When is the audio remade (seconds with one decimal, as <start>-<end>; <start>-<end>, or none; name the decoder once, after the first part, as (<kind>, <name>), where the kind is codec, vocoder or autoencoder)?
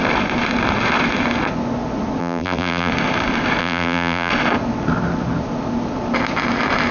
2.2-2.9 (vocoder, BigVGAN v2); 3.6-4.3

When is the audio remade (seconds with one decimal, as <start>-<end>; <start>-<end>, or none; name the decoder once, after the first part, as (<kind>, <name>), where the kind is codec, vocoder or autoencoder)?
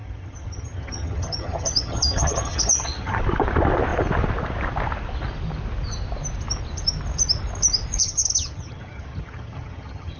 0.0-3.2 (vocoder, HiFi-GAN); 8.0-10.2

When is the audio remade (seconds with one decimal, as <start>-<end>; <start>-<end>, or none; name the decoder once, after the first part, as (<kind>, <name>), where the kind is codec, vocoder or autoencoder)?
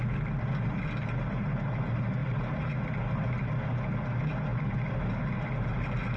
none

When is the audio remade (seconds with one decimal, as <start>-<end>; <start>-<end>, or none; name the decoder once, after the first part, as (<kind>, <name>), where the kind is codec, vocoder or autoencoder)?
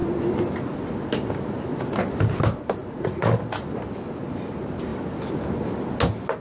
2.8-3.3 (vocoder, Vocos)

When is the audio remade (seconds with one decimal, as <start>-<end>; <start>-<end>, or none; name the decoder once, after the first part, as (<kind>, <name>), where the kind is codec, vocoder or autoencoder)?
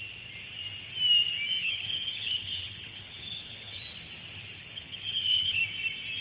1.6-3.8 (codec, HILCodec); 4.6-5.6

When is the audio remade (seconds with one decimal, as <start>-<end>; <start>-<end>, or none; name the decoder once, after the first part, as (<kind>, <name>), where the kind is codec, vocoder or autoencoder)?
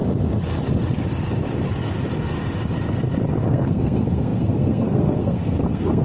3.4-6.0 (codec, SNAC)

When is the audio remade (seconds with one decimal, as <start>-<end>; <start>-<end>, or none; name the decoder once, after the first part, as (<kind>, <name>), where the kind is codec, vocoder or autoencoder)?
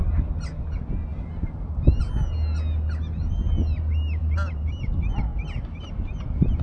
1.1-2.0 (vocoder, BigVGAN v2); 4.2-4.8; 5.3-5.9